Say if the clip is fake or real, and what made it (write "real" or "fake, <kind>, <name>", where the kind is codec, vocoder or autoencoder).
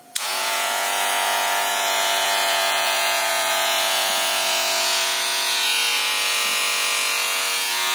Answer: fake, vocoder, Vocos